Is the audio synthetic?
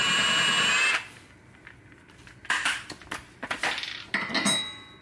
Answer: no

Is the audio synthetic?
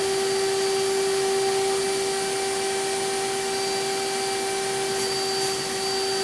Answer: no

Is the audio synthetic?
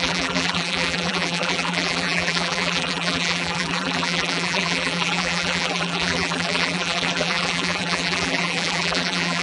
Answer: yes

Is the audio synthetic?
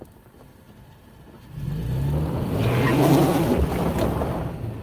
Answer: no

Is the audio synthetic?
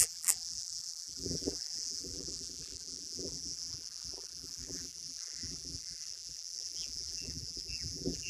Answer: yes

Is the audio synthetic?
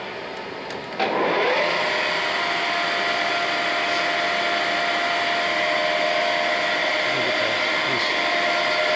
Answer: no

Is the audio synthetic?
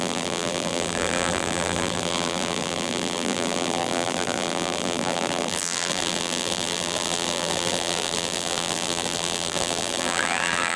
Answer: yes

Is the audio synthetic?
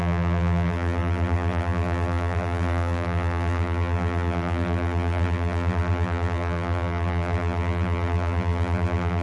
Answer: yes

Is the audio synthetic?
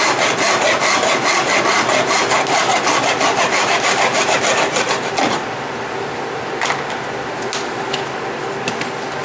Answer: no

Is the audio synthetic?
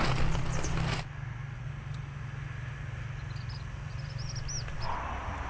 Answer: no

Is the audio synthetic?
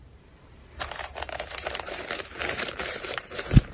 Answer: yes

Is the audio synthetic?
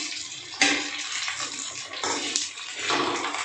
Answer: yes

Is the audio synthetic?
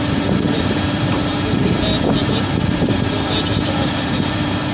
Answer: yes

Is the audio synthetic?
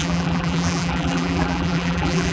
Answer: yes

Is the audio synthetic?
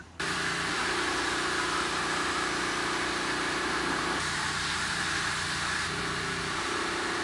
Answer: yes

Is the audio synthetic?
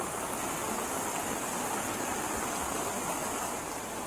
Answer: no